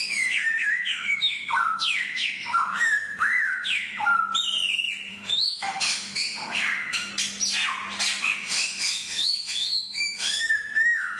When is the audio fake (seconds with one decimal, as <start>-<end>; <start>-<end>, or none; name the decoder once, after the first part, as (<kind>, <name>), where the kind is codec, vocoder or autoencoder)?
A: 0.0-4.1 (autoencoder, DAC-VAE); 5.1-7.1; 8.2-11.2